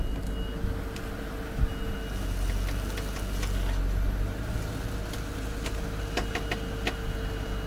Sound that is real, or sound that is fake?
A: real